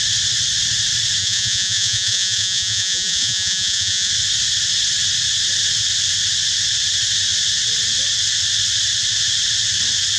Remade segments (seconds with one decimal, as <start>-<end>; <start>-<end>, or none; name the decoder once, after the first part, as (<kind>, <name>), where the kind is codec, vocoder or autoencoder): 1.2-4.1 (vocoder, Vocos)